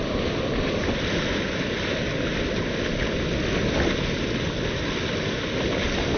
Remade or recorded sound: recorded